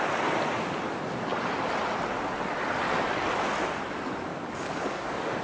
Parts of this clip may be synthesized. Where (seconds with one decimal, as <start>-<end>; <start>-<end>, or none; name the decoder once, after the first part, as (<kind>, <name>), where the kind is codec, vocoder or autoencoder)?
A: 4.3-5.4 (codec, DAC)